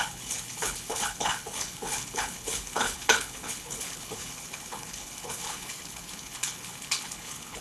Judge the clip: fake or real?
fake